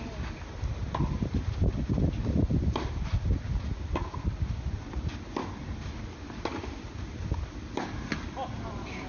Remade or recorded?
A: recorded